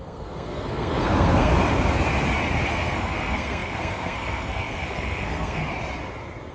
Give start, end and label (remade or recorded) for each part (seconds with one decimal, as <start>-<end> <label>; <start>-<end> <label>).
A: 0.0-1.5 remade; 1.5-2.7 recorded; 2.7-5.6 remade; 5.6-6.5 recorded